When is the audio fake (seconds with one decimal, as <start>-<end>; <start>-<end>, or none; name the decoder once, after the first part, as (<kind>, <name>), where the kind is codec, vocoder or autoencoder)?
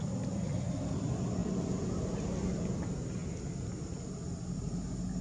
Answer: none